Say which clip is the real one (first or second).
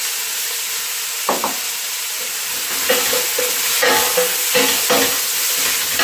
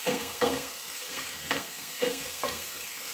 first